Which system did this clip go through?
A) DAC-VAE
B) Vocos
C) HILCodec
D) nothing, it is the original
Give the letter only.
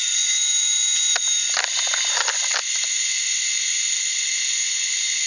D